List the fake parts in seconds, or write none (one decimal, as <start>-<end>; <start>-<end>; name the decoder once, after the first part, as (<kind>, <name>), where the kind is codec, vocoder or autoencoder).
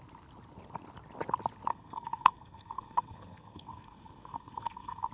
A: 1.7-5.1 (codec, SNAC)